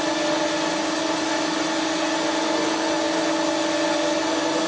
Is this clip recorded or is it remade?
recorded